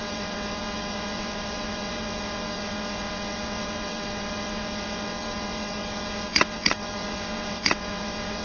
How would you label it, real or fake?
fake